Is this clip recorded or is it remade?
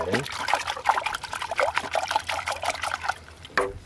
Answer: recorded